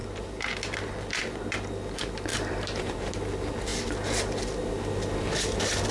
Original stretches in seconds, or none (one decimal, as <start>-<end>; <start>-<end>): 0.5-2.3; 3.1-5.9